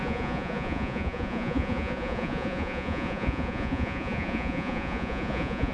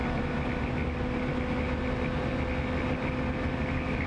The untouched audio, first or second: second